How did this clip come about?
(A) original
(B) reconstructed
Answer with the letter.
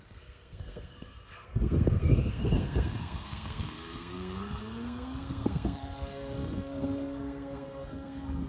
B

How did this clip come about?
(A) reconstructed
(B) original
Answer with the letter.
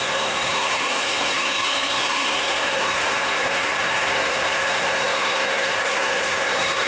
A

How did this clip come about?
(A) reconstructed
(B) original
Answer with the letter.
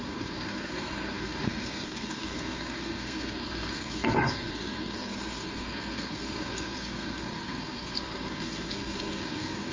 A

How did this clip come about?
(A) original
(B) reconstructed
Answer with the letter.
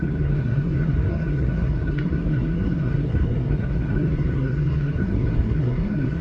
B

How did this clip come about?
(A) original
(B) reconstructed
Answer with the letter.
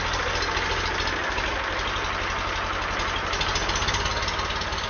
A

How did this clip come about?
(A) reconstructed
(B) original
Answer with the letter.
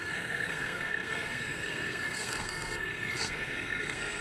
A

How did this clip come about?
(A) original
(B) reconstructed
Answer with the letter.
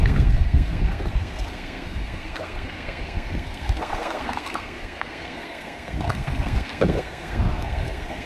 B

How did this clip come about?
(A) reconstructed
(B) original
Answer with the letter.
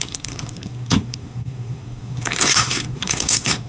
A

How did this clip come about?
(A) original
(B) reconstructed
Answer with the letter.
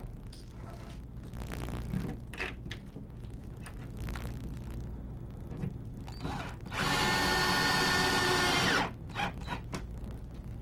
A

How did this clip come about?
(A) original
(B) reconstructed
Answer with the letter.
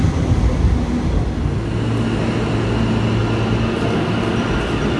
A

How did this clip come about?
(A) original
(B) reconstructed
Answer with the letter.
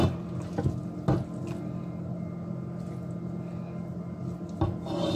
A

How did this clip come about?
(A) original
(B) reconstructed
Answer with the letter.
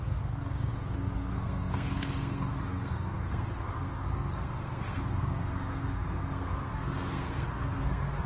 B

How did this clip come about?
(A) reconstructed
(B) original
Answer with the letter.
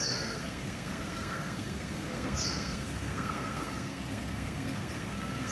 A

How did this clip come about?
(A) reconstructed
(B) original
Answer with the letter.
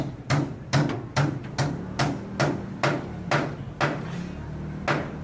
B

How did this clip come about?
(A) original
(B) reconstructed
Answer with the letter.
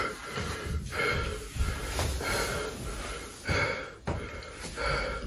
A